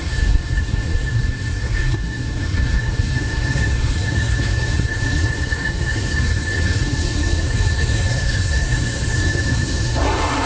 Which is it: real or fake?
fake